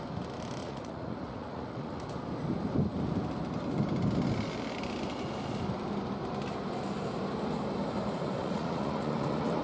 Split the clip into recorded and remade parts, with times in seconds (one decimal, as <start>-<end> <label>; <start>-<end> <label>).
0.0-0.6 recorded; 0.6-2.0 remade; 2.0-8.4 recorded; 8.4-9.6 remade